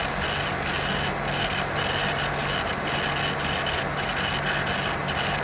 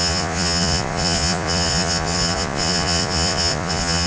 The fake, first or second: second